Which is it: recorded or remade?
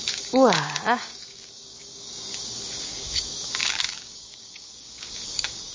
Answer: remade